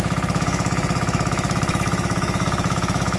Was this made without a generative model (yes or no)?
no